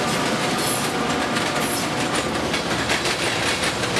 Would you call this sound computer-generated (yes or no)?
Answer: no